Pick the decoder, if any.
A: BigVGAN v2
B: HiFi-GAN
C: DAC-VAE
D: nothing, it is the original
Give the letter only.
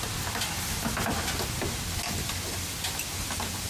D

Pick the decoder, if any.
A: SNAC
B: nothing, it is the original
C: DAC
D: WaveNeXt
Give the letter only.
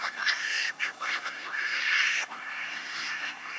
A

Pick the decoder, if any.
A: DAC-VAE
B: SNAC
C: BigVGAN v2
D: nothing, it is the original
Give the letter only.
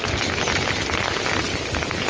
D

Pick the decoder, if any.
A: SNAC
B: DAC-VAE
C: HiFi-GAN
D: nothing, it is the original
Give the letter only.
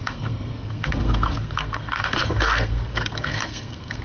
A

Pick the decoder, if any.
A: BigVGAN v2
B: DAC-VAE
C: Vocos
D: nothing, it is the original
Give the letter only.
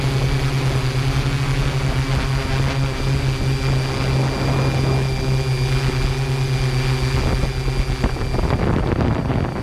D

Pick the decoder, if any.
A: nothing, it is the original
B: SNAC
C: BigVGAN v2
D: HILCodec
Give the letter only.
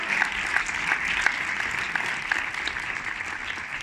A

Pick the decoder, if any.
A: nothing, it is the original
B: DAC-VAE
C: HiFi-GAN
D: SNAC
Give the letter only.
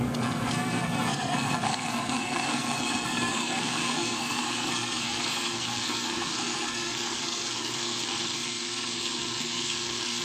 D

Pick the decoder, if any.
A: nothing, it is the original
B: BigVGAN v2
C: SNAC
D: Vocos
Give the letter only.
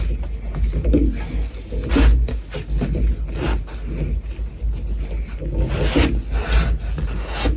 A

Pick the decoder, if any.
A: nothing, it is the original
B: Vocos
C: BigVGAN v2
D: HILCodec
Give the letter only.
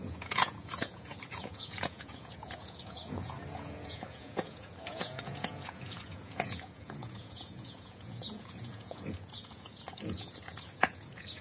B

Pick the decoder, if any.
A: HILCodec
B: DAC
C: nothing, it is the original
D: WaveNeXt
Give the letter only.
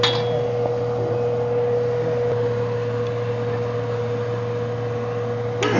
C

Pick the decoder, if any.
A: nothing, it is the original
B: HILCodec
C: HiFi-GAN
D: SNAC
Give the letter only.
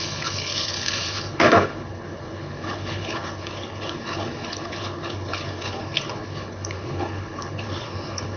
B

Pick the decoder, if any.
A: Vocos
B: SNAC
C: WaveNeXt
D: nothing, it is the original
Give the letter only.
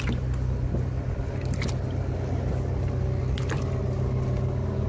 D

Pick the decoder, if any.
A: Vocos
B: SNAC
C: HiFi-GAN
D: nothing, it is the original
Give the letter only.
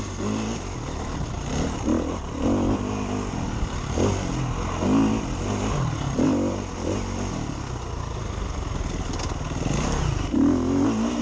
D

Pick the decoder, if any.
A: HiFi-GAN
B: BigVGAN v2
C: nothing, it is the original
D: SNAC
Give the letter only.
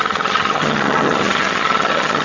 A